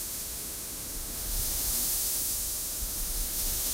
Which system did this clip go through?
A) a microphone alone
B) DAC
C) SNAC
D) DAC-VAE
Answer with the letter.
D